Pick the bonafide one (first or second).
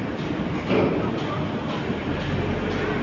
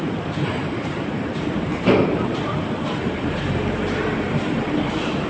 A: first